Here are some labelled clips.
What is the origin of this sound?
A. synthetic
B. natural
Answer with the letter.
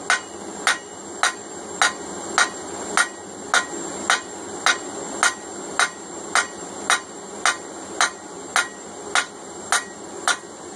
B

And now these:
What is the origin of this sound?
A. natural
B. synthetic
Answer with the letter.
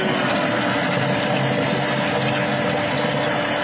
A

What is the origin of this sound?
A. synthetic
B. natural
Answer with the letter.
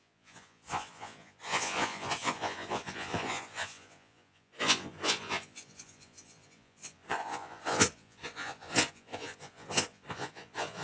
A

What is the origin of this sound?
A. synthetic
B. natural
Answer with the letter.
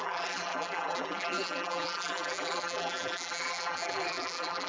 A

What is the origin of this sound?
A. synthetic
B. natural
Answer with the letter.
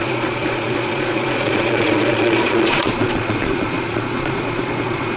A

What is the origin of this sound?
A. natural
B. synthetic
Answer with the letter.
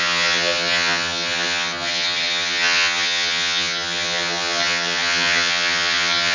B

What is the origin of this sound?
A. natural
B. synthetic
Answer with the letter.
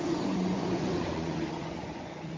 B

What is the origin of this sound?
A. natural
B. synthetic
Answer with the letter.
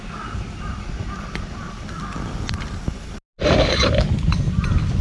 A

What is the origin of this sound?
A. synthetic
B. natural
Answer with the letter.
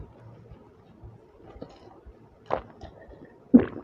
B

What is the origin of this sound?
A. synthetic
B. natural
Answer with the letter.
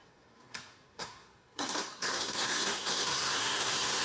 A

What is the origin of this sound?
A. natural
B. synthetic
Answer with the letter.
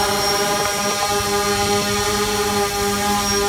A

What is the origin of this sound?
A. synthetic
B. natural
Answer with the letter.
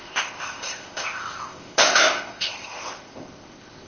A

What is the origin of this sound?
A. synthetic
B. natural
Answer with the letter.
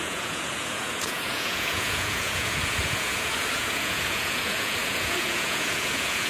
A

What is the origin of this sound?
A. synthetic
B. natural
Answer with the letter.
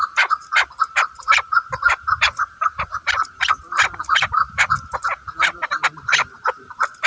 A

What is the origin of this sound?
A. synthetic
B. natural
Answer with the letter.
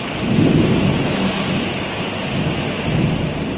B